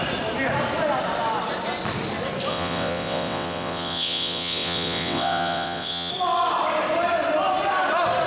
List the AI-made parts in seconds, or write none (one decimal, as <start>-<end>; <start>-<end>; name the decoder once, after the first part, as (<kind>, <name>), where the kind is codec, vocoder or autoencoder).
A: 2.5-6.1 (vocoder, WaveNeXt)